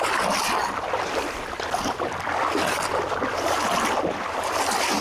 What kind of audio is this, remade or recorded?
recorded